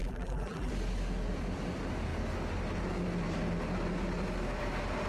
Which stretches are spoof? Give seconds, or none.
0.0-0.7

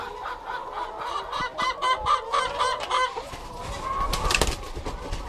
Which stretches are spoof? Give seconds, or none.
0.0-3.6

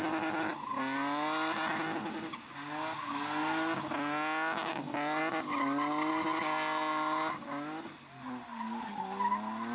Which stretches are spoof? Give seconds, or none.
none